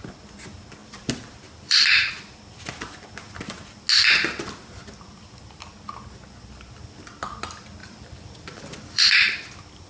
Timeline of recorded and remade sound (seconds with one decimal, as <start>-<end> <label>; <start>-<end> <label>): 0.0-0.8 recorded; 0.8-2.1 remade; 2.1-7.8 recorded; 7.8-9.0 remade; 9.0-9.9 recorded